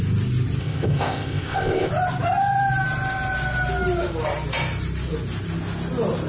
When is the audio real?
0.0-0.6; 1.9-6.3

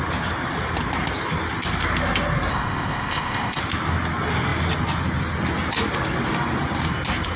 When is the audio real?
0.0-2.5; 3.6-7.4

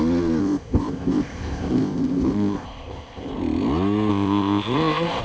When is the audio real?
0.0-0.4; 3.3-4.1

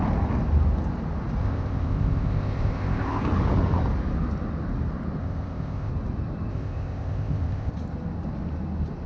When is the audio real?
0.0-1.4; 3.2-5.2; 5.9-6.5; 7.7-9.1